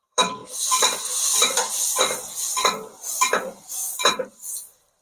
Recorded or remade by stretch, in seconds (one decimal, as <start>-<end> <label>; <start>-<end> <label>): 0.0-2.6 remade; 2.6-4.3 recorded; 4.3-5.0 remade